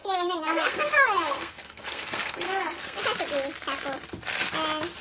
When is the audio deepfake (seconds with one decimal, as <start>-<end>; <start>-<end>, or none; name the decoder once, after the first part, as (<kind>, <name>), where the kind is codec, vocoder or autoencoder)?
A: 0.0-3.0 (codec, SNAC)